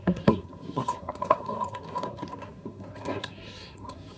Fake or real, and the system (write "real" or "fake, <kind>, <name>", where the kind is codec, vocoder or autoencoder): fake, codec, SNAC